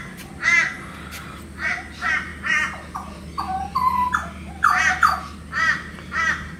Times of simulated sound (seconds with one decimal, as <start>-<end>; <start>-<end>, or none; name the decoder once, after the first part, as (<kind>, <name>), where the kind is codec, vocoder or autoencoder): none